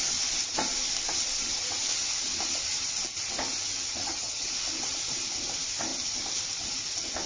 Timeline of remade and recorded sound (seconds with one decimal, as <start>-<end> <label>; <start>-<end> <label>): 0.0-4.0 recorded; 4.0-4.5 remade; 4.5-7.3 recorded